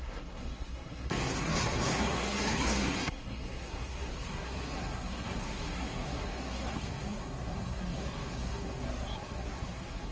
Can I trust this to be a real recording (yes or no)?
no